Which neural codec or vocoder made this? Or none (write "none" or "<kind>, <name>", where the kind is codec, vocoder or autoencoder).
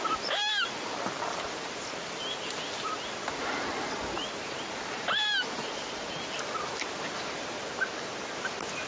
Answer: none